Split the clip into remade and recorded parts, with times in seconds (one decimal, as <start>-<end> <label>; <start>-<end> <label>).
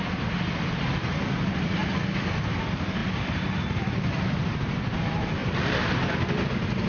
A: 0.0-3.0 recorded; 3.0-4.8 remade; 4.8-5.4 recorded; 5.4-6.5 remade; 6.5-6.9 recorded